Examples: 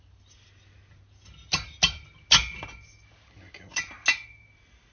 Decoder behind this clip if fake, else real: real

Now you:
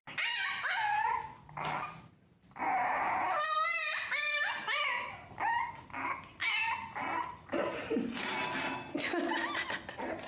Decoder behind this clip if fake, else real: real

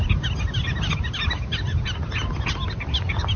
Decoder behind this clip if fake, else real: real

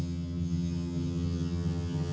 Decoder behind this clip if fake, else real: fake, vocoder, HiFi-GAN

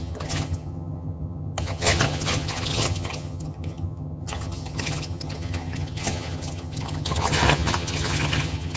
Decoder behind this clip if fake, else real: fake, vocoder, HiFi-GAN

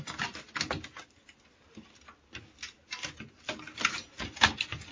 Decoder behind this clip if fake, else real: real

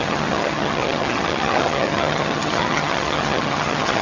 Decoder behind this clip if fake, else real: fake, vocoder, HiFi-GAN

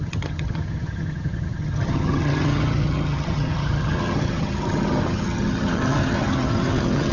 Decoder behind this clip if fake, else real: fake, vocoder, HiFi-GAN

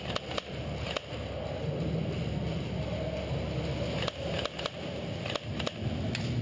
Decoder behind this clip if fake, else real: real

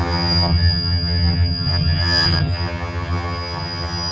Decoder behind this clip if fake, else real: fake, vocoder, HiFi-GAN